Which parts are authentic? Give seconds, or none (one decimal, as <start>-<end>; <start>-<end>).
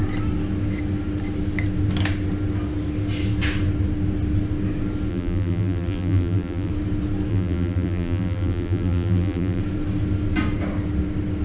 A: 0.0-5.1; 6.7-7.3; 9.6-11.4